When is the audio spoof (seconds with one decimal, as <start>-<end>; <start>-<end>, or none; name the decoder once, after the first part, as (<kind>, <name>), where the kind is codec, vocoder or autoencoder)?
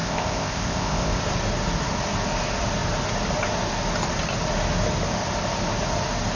0.0-1.2 (codec, ZipCodec)